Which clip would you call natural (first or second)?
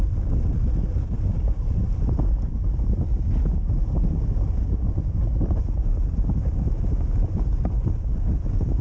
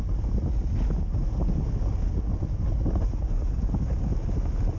second